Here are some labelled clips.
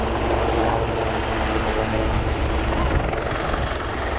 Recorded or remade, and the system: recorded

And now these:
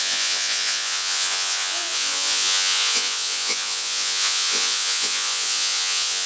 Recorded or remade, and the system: remade, vocoder, Vocos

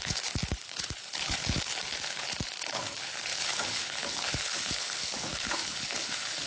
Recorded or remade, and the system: remade, codec, HILCodec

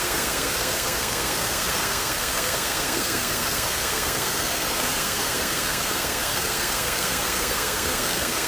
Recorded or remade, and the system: remade, codec, SNAC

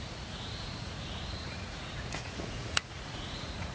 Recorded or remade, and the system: remade, vocoder, Vocos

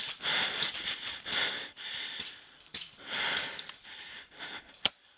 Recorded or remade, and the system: recorded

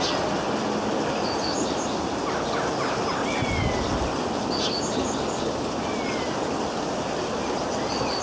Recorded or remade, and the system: recorded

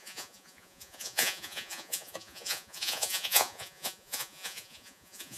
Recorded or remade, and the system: remade, vocoder, Vocos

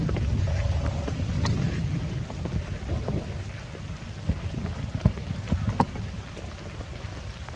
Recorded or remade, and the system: recorded